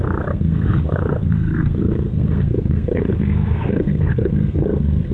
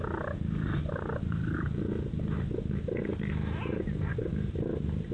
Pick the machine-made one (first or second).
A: first